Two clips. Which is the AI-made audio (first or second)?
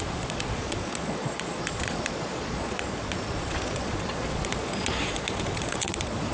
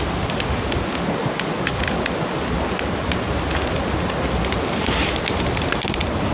first